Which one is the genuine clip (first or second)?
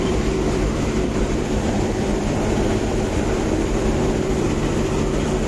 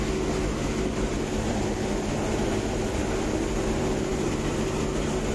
second